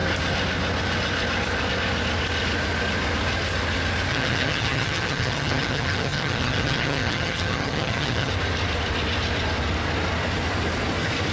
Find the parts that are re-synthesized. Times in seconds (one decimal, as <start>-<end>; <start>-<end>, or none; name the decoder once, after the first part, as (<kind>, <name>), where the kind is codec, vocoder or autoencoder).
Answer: 4.1-8.3 (vocoder, HiFi-GAN)